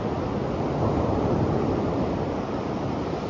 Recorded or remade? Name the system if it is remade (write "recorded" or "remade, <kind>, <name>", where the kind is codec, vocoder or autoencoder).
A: remade, vocoder, BigVGAN v2